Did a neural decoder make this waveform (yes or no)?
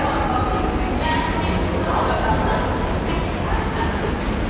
no